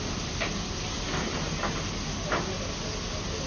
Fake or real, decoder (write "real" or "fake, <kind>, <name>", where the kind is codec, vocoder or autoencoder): real